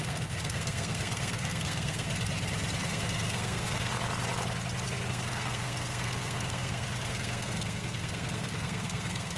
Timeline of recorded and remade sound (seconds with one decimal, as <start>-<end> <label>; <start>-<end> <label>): 0.0-2.1 remade; 2.1-2.9 recorded; 2.9-3.9 remade; 3.9-5.1 recorded; 5.1-9.4 remade